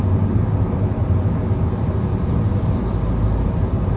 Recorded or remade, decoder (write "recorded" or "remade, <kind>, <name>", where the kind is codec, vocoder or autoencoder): recorded